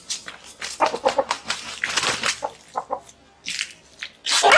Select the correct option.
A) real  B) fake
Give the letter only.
A